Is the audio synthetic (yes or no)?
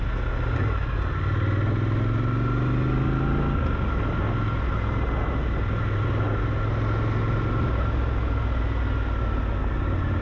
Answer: no